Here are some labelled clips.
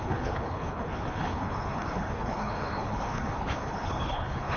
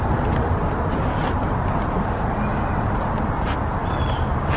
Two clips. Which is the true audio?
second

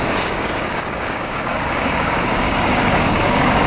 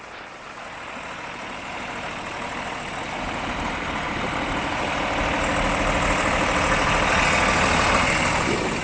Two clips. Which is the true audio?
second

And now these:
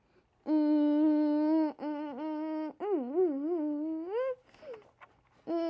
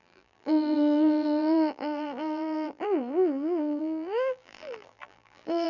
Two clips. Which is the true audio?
first